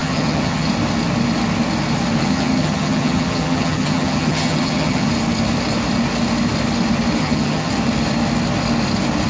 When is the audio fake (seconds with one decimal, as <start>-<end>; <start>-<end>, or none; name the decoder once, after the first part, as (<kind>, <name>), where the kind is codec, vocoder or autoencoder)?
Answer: 0.0-0.7 (vocoder, HiFi-GAN); 2.2-5.1; 7.2-7.7